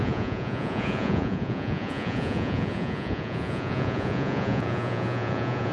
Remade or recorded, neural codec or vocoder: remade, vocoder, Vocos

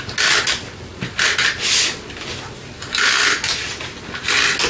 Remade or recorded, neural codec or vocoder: recorded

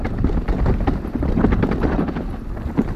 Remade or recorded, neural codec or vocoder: remade, vocoder, BigVGAN v2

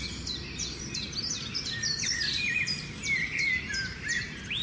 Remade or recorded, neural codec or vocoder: recorded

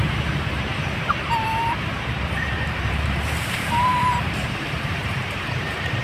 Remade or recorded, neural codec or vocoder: remade, vocoder, BigVGAN v2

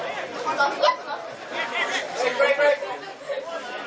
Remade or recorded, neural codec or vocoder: recorded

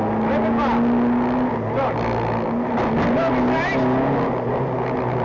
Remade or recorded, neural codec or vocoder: recorded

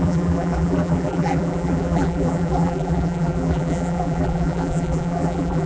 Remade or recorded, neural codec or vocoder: remade, vocoder, BigVGAN v2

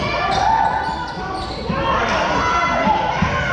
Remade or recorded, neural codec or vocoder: recorded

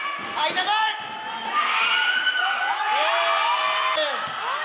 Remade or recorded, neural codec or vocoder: recorded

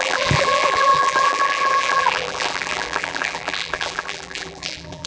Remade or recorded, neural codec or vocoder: remade, vocoder, BigVGAN v2